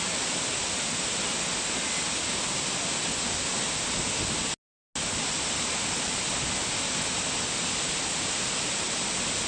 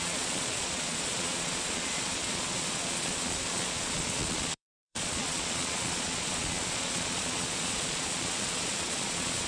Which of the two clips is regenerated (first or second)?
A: second